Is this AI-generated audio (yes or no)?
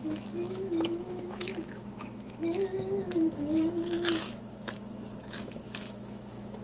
yes